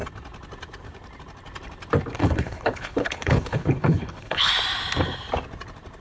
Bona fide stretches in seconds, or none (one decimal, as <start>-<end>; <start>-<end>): 0.0-2.2; 4.5-6.0